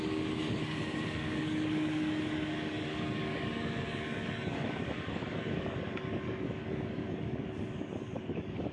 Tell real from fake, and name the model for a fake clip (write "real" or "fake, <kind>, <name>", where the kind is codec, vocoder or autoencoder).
fake, codec, DAC